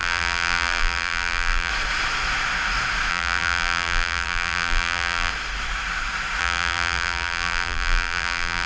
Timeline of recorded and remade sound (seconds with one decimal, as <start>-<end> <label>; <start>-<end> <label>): 0.0-1.7 remade; 1.7-3.1 recorded; 3.1-5.3 remade; 5.3-6.4 recorded; 6.4-8.7 remade